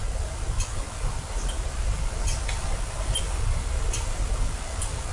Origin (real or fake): real